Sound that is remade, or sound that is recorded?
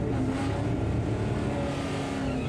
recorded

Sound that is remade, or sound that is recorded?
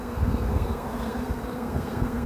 remade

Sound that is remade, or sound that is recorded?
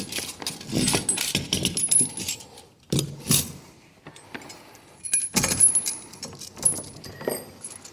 recorded